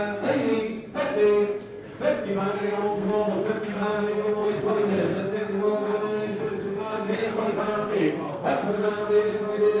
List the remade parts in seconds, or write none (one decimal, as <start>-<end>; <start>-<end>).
0.0-0.7; 2.4-9.8